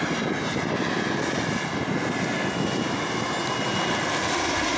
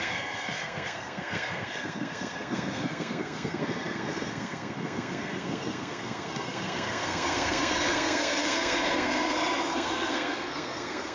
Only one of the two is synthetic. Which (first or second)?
second